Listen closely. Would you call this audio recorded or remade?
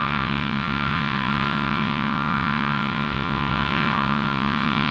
remade